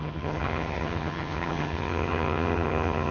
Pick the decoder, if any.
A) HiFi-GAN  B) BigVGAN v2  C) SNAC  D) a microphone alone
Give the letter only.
A